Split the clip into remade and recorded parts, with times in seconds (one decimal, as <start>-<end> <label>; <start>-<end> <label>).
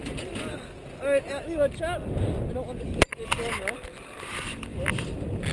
0.0-5.5 recorded